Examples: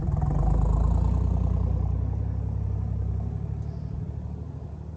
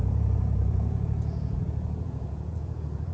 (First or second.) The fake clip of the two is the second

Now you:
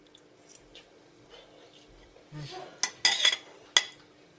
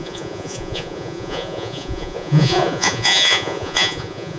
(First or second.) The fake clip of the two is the second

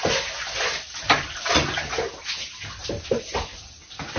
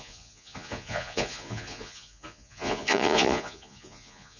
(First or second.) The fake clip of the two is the second